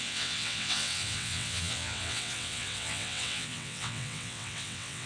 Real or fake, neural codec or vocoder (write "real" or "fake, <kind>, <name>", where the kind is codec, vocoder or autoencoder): fake, vocoder, WaveNeXt